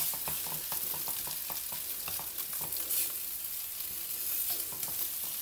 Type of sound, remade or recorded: recorded